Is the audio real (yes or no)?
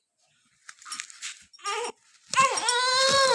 yes